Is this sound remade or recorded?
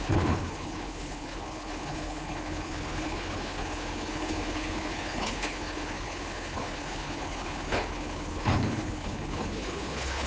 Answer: remade